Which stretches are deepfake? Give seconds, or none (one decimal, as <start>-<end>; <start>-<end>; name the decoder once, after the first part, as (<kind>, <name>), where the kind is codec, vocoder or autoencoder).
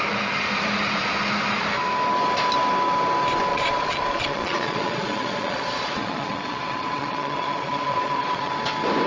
3.5-8.5 (vocoder, Vocos)